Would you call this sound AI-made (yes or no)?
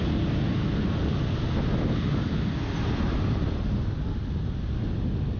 no